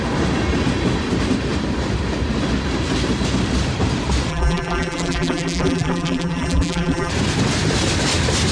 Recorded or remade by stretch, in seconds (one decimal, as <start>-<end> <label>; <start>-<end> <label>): 0.0-4.3 recorded; 4.3-7.1 remade; 7.1-8.5 recorded